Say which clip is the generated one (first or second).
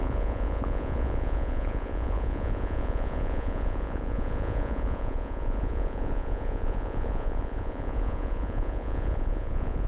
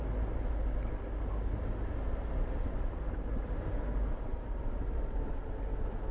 first